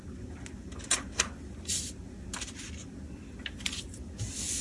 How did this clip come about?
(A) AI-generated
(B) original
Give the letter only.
B